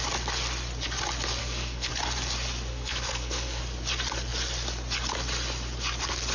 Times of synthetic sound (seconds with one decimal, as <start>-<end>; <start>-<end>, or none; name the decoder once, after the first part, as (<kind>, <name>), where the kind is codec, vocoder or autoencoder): 1.4-1.9 (codec, SNAC); 2.7-3.6